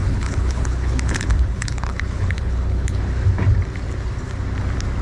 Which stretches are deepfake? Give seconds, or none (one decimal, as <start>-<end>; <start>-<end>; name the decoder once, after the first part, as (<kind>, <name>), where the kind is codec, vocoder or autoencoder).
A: 0.0-3.0 (codec, HILCodec)